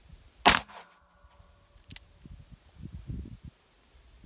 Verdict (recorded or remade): recorded